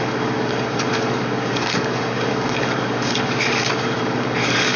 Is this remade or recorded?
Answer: remade